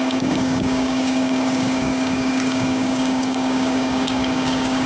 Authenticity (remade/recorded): remade